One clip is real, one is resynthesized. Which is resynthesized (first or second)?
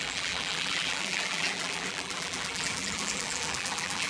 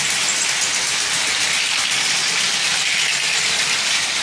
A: first